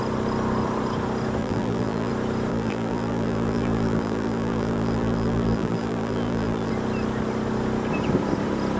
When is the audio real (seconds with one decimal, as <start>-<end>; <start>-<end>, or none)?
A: 0.0-1.4; 2.1-2.5; 6.7-8.8